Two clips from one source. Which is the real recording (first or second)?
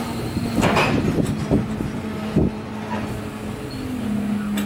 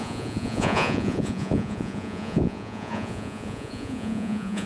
first